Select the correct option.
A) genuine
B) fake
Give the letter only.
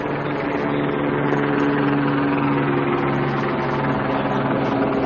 A